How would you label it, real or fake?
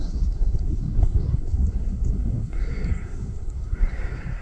fake